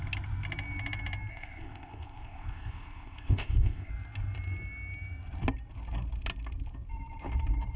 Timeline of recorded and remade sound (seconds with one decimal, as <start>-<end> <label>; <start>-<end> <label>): 0.0-1.3 recorded; 1.3-3.9 remade; 3.9-7.8 recorded